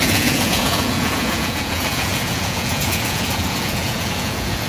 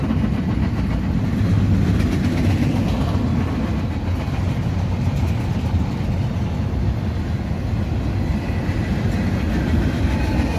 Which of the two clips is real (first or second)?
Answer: second